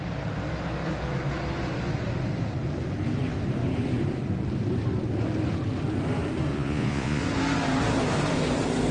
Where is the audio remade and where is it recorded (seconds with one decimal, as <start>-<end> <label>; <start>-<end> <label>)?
0.0-6.5 recorded; 6.5-7.2 remade; 7.2-8.9 recorded